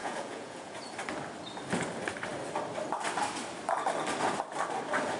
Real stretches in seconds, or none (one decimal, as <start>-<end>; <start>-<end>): 0.8-5.2